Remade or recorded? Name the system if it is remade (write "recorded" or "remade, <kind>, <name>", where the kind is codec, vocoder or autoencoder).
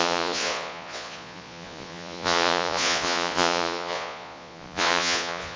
remade, vocoder, Vocos